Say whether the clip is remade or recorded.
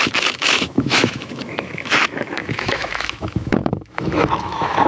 remade